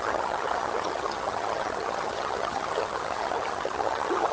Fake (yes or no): yes